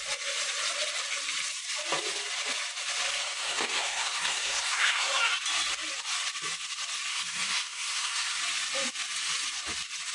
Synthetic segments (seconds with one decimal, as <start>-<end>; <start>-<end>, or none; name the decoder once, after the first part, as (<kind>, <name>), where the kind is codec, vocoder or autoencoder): 3.2-5.2 (codec, SNAC); 7.1-8.4